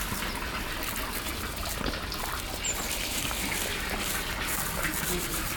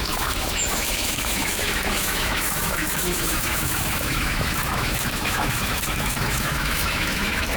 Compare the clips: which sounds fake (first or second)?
second